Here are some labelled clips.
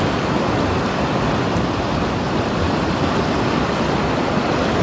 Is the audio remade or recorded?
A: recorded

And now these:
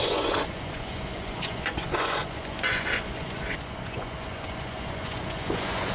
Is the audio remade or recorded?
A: remade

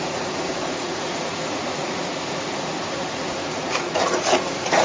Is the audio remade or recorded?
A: remade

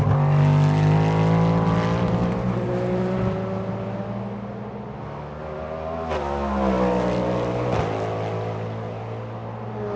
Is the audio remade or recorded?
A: recorded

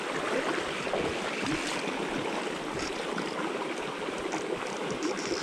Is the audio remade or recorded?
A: recorded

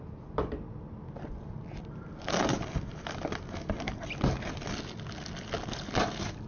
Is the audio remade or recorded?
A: recorded